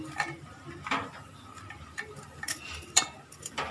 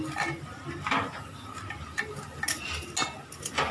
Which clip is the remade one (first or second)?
first